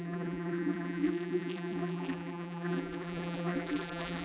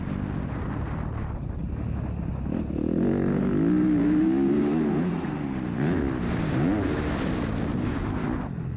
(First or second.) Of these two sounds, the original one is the second